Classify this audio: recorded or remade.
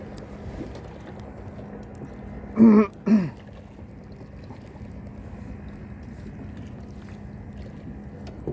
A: recorded